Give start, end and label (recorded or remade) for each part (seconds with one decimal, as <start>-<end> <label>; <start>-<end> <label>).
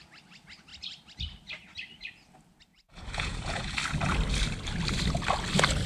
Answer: 0.0-2.7 recorded; 2.7-3.7 remade; 3.7-5.9 recorded